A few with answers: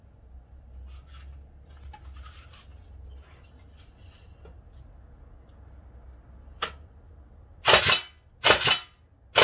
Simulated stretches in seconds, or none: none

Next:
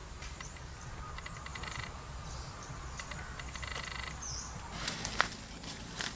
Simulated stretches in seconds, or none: none